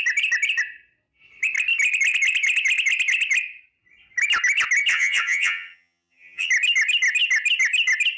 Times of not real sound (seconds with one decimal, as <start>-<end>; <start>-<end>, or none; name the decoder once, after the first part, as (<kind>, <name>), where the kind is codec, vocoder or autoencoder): 4.9-6.5 (vocoder, HiFi-GAN)